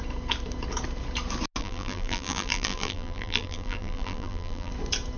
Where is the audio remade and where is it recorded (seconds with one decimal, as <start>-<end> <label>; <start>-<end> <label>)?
0.0-1.6 recorded; 1.6-4.7 remade; 4.7-5.2 recorded